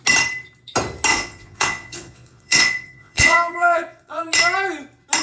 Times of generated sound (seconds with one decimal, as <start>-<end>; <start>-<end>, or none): 1.1-4.2